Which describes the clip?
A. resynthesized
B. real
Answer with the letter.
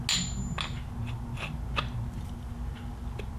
B